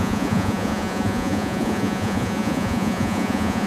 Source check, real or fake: fake